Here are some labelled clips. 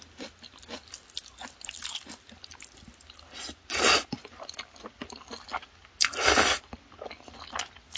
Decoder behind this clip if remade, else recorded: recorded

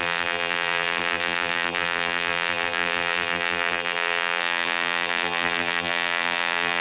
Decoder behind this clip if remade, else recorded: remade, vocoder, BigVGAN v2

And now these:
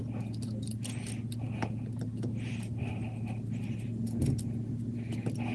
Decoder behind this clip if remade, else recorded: recorded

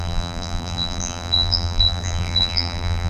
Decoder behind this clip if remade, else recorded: remade, vocoder, BigVGAN v2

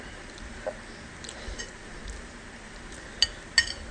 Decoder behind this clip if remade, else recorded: recorded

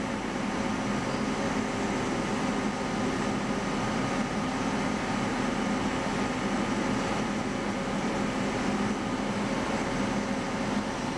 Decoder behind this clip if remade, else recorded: recorded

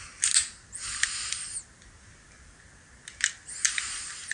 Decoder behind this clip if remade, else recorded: recorded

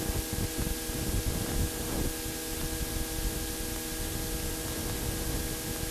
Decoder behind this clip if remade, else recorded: recorded